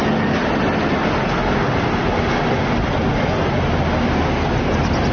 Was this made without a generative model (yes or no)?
yes